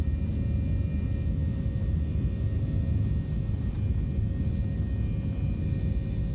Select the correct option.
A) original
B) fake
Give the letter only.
A